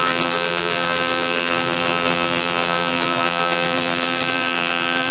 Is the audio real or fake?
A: fake